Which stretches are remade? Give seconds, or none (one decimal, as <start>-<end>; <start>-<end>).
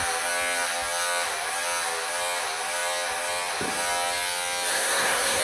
4.7-5.4